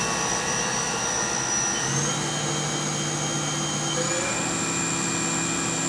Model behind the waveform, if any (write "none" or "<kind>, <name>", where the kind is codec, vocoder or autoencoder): none